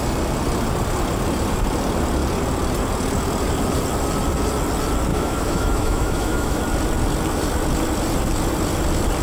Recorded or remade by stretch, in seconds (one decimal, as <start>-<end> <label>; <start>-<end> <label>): 0.0-5.1 recorded; 5.1-6.6 remade; 6.6-9.2 recorded